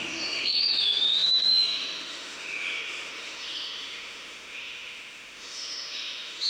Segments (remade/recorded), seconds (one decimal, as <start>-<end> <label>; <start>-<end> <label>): 0.0-6.5 remade